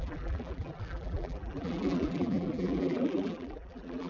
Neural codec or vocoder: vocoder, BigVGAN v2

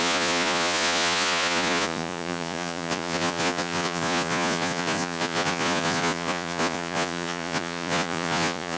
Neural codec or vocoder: vocoder, Vocos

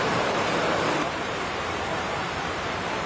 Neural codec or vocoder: vocoder, BigVGAN v2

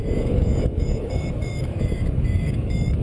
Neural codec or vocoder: codec, DAC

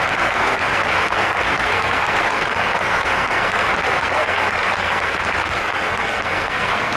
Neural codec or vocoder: codec, SNAC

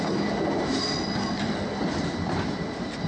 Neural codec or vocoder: none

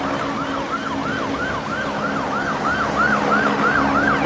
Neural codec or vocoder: none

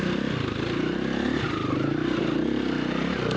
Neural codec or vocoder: none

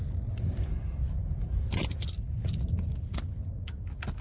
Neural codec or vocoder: none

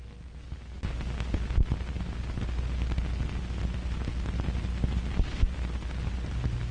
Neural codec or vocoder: none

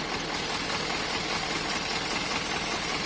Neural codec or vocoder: none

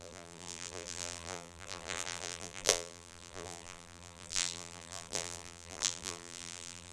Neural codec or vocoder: vocoder, BigVGAN v2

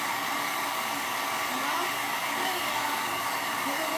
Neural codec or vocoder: codec, DAC